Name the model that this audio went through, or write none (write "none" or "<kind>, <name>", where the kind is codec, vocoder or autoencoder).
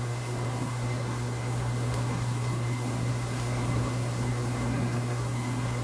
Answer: codec, SNAC